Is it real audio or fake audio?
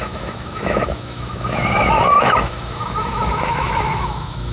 fake